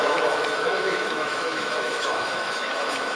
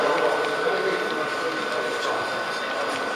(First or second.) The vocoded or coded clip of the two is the first